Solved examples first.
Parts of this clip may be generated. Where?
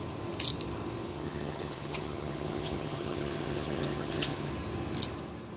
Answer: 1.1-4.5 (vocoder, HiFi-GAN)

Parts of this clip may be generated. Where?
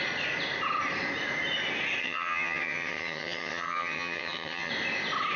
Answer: 2.0-4.7 (vocoder, HiFi-GAN)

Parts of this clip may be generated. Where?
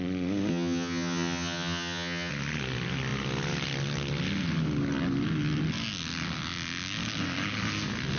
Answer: 0.5-2.3 (vocoder, HiFi-GAN)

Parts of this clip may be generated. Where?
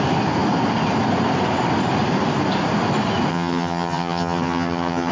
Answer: 3.3-5.1 (vocoder, HiFi-GAN)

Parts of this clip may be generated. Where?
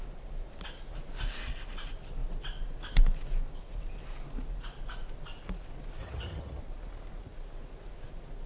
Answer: 6.0-6.6 (vocoder, HiFi-GAN)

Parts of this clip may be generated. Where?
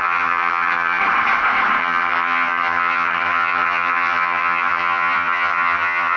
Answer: 0.0-1.0 (vocoder, HiFi-GAN); 1.8-6.2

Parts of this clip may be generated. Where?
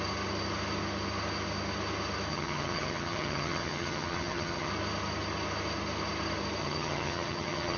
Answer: 2.3-4.7 (vocoder, HiFi-GAN); 6.6-7.8